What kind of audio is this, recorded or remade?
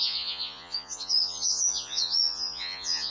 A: remade